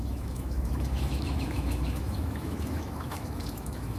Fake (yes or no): yes